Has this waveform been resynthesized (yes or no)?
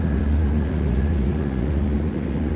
yes